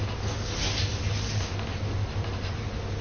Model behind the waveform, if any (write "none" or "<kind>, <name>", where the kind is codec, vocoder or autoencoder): none